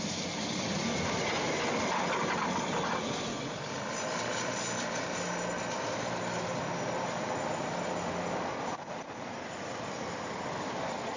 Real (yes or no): yes